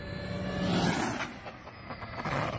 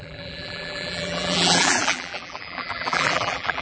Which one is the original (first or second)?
first